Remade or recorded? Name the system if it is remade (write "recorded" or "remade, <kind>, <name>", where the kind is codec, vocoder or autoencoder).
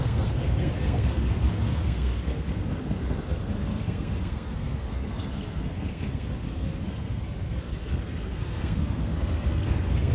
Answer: remade, codec, SNAC